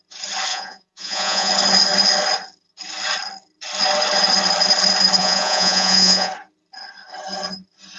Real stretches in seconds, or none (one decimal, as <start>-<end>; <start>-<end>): 0.0-0.5; 1.5-5.2; 6.3-8.0